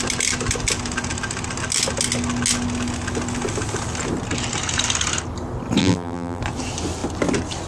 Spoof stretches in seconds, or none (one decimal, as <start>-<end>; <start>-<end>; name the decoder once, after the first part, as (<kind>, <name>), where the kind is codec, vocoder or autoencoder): 5.8-6.4 (vocoder, BigVGAN v2)